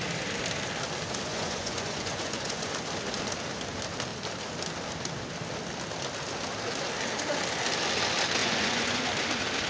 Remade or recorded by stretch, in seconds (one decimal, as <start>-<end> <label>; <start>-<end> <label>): 0.0-1.3 recorded; 1.3-2.7 remade; 2.7-8.4 recorded; 8.4-9.0 remade; 9.0-9.7 recorded